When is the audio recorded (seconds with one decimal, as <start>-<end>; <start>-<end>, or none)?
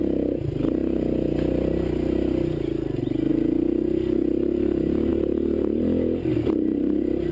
0.0-7.3